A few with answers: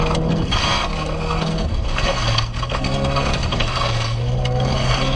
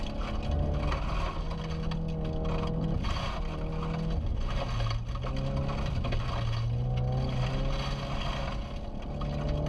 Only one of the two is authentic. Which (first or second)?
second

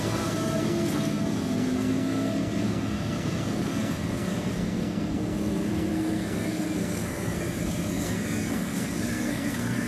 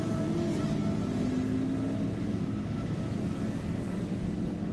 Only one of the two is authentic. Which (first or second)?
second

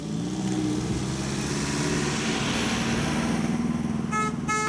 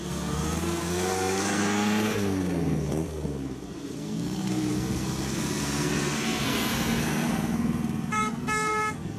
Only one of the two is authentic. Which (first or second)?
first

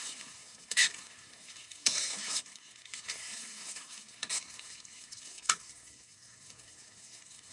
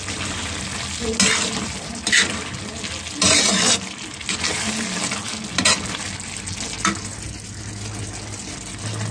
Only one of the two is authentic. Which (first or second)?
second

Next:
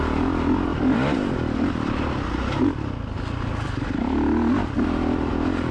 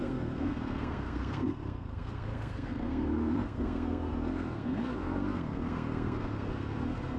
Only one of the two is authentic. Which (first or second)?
first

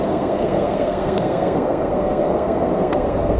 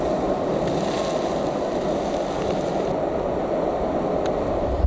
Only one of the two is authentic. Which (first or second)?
second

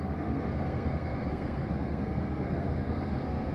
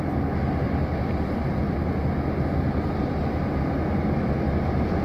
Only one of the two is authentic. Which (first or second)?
second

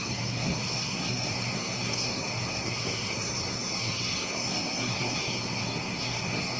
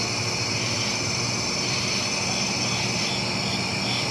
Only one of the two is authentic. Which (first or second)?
second